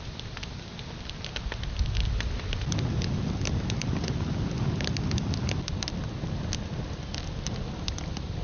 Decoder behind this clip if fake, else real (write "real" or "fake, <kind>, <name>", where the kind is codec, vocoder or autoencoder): real